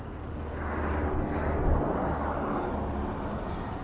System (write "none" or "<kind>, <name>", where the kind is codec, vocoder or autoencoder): none